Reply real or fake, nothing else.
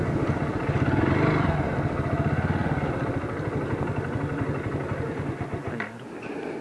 real